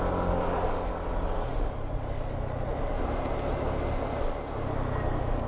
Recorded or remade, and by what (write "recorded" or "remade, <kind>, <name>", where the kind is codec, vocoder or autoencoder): recorded